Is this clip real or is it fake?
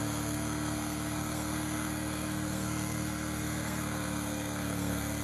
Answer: fake